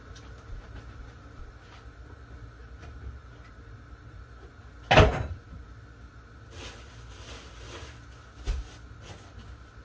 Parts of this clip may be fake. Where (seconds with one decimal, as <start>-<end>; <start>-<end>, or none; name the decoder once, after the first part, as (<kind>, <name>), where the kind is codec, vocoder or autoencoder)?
0.0-1.4 (vocoder, BigVGAN v2); 2.6-4.2